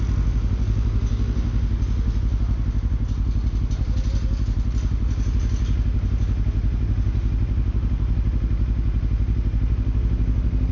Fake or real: real